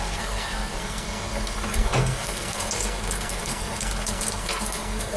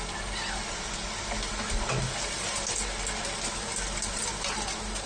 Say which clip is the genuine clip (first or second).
second